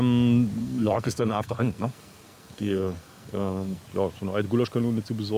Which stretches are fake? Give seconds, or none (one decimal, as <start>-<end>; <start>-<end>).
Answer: 0.6-3.8